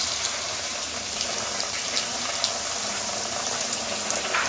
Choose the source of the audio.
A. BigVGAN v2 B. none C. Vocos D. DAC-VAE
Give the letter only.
A